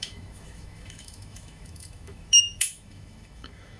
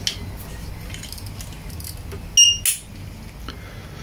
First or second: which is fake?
first